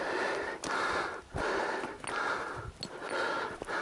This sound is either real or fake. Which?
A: real